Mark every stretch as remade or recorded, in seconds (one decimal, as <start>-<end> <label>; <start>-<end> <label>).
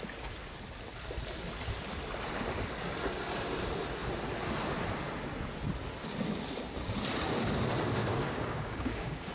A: 0.0-8.0 recorded; 8.0-9.3 remade